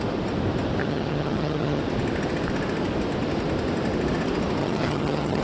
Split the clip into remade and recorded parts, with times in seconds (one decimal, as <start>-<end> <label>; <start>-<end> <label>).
0.0-0.8 recorded; 0.8-1.8 remade; 1.8-4.6 recorded; 4.6-5.4 remade

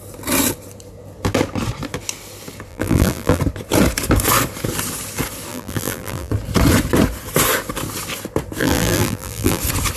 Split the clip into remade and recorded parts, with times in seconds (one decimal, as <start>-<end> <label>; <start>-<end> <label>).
0.0-2.7 recorded; 2.7-3.4 remade; 3.4-5.5 recorded; 5.5-6.3 remade; 6.3-8.6 recorded; 8.6-9.6 remade; 9.6-10.0 recorded

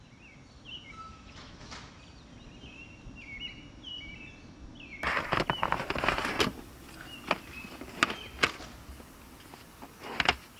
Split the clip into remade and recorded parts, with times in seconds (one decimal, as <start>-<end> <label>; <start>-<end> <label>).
0.0-1.1 recorded; 1.1-2.0 remade; 2.0-10.6 recorded

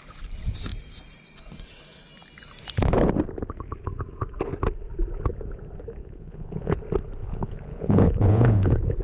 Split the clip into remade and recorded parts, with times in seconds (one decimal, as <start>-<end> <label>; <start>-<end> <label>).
0.0-6.0 recorded; 6.0-6.8 remade; 6.8-7.2 recorded; 7.2-9.0 remade

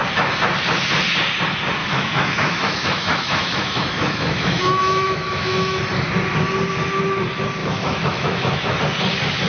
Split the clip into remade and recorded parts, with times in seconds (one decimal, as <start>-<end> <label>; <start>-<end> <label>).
0.0-1.8 recorded; 1.8-5.8 remade; 5.8-7.6 recorded; 7.6-8.8 remade; 8.8-9.5 recorded

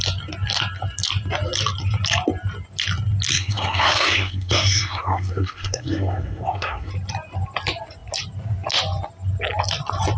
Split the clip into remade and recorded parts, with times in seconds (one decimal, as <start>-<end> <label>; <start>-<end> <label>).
0.0-3.3 recorded; 3.3-6.9 remade; 6.9-10.2 recorded

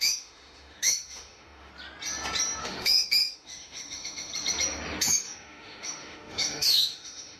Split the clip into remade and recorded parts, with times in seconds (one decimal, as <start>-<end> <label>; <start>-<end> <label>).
0.0-1.7 remade; 1.7-2.6 recorded; 2.6-4.3 remade; 4.3-5.0 recorded; 5.0-7.4 remade